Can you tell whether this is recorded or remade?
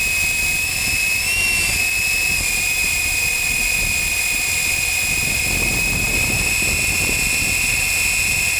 recorded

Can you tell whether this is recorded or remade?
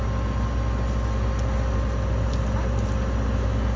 recorded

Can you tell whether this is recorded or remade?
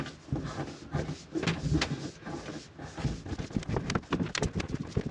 recorded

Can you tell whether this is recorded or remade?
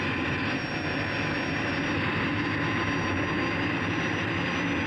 recorded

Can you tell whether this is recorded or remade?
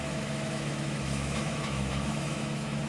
remade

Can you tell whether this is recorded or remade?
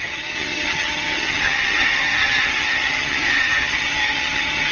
remade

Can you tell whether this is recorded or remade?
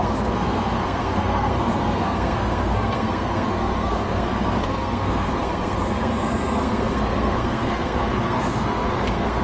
remade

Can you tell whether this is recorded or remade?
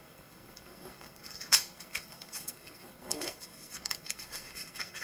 remade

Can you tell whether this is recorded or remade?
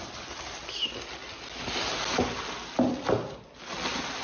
recorded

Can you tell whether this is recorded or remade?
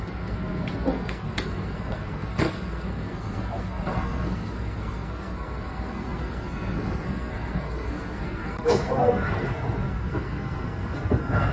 remade